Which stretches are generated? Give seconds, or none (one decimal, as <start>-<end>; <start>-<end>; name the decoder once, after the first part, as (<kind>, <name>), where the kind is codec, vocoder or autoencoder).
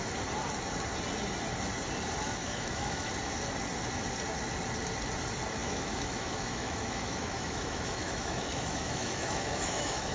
2.4-3.1 (autoencoder, DAC-VAE); 5.6-10.1